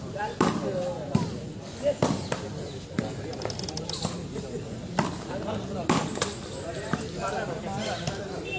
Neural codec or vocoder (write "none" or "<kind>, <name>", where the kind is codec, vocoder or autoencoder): none